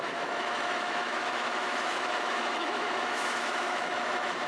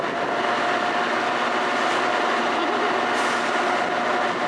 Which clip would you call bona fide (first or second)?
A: second